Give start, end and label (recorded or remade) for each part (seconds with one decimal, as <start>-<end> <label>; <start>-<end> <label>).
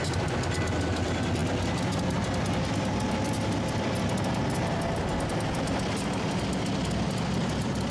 0.0-7.9 recorded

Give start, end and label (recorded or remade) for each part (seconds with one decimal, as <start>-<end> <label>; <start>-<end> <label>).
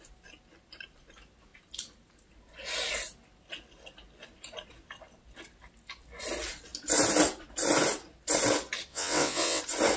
0.0-8.9 recorded; 8.9-9.6 remade; 9.6-10.0 recorded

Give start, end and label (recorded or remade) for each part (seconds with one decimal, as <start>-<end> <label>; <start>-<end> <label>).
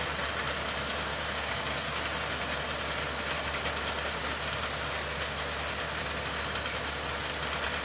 0.0-1.1 recorded; 1.1-2.0 remade; 2.0-7.8 recorded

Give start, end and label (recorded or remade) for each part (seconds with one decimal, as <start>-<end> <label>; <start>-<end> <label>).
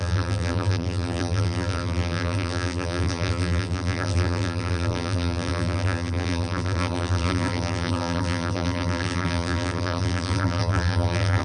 0.0-11.4 remade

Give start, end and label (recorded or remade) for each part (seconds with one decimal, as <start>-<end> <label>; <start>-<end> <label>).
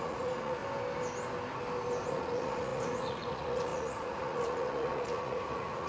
0.0-0.6 remade; 0.6-2.1 recorded; 2.1-5.9 remade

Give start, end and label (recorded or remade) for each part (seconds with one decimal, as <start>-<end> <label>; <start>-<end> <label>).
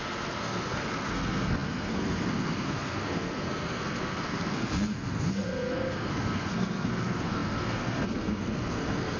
0.0-9.2 remade